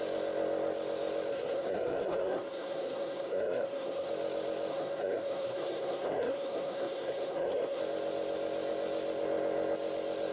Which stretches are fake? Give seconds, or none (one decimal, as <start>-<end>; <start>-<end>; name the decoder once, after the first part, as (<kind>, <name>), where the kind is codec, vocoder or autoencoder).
1.3-4.1 (codec, SNAC); 4.7-7.8